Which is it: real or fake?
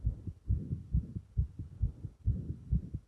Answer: real